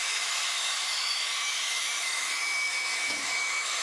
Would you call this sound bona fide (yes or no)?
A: no